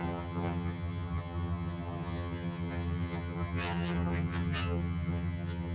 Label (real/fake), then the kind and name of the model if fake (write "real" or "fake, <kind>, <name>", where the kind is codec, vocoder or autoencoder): fake, vocoder, HiFi-GAN